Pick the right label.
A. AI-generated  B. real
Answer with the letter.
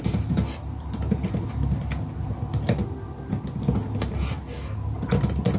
B